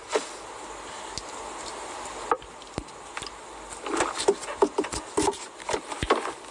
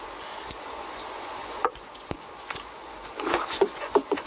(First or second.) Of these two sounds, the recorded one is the first